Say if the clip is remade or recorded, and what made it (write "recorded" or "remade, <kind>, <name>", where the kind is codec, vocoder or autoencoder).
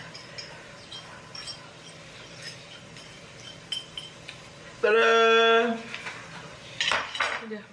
recorded